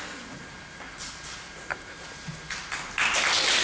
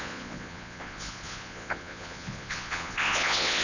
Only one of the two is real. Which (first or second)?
first